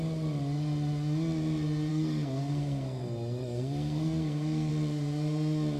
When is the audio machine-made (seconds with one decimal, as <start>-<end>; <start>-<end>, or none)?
1.9-4.7